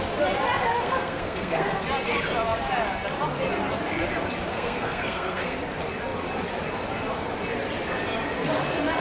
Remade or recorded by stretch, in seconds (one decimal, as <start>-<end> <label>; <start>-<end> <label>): 0.0-0.7 recorded; 0.7-1.8 remade; 1.8-4.5 recorded; 4.5-5.6 remade; 5.6-9.0 recorded